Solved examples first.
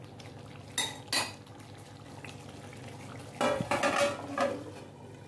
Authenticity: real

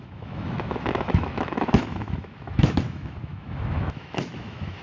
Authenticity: fake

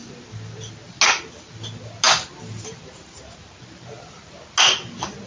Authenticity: real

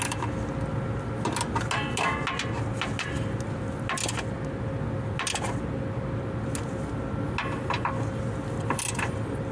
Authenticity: real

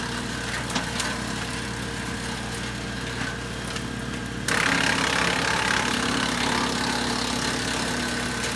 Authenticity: real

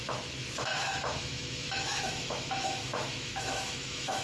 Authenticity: fake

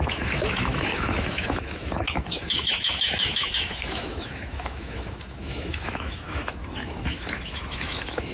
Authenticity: fake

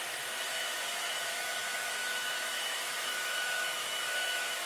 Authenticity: fake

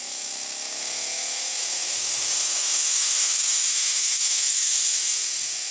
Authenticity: fake